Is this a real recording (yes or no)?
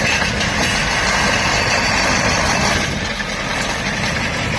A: no